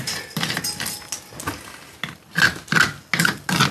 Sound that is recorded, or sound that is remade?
recorded